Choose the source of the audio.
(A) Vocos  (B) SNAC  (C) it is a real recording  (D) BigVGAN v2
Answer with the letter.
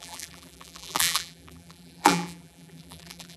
D